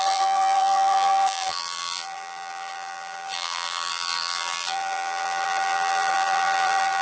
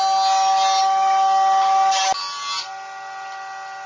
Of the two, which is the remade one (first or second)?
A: first